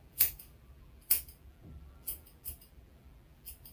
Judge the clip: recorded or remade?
remade